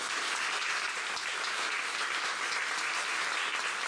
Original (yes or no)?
yes